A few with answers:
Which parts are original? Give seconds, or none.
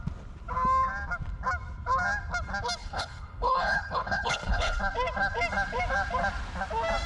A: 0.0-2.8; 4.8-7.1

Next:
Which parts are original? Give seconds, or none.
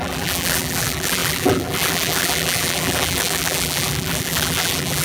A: none